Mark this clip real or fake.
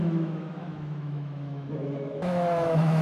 fake